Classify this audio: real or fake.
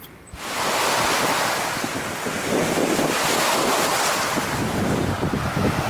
real